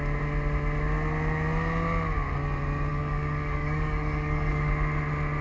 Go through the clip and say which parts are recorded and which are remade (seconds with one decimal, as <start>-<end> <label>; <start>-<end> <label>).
0.0-2.9 recorded; 2.9-4.7 remade; 4.7-5.4 recorded